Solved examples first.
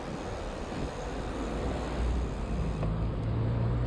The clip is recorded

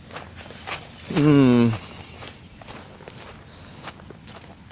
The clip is recorded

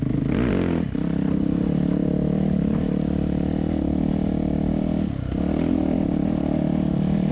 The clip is recorded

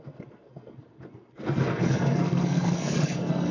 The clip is remade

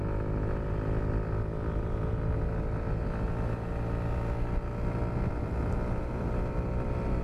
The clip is recorded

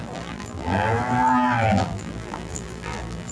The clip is remade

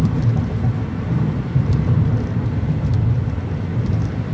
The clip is recorded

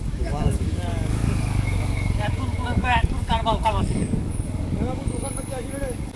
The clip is remade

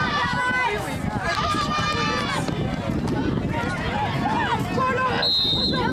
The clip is recorded